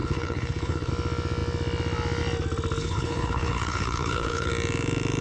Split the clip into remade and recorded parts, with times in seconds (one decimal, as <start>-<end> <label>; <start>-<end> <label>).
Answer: 0.0-0.9 remade; 0.9-2.8 recorded; 2.8-4.5 remade; 4.5-5.2 recorded